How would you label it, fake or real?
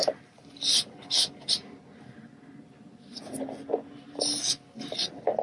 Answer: real